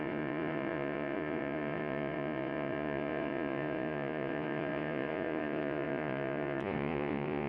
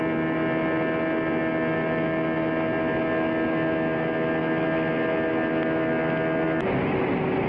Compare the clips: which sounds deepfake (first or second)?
first